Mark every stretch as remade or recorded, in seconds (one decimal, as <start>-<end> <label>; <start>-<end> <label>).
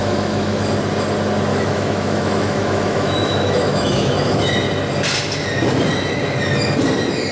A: 0.0-0.7 remade; 0.7-1.5 recorded; 1.5-4.4 remade; 4.4-7.3 recorded